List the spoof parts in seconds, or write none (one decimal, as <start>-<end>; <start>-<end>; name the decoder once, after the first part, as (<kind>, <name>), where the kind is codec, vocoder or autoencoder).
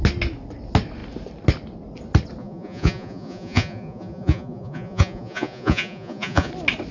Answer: 2.4-6.5 (vocoder, Vocos)